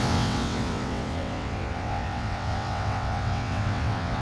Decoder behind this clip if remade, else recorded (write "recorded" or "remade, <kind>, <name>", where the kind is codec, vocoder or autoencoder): remade, vocoder, WaveNeXt